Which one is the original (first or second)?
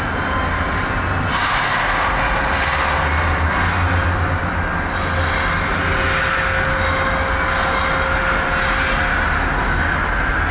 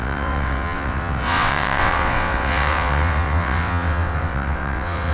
first